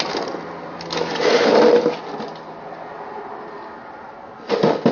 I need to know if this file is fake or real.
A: real